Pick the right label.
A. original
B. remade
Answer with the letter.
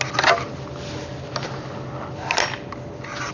A